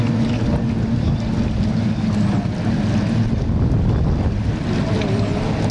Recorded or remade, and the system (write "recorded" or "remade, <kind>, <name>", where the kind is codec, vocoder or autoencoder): recorded